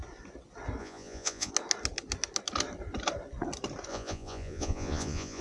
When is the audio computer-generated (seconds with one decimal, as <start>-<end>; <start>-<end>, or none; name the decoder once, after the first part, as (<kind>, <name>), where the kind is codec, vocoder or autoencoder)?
0.8-1.5 (vocoder, Vocos); 3.9-5.4